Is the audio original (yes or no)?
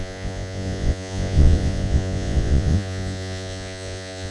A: no